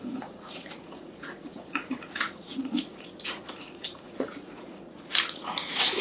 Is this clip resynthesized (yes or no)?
yes